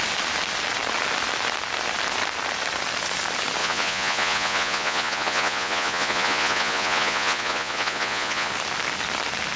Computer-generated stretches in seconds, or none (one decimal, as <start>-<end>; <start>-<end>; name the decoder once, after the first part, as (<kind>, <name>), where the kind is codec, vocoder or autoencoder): 3.6-8.5 (vocoder, Vocos)